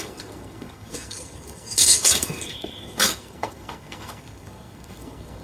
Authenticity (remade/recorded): remade